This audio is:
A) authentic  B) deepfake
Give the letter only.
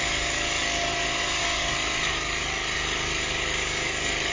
B